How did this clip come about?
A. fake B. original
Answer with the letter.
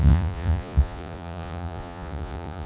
A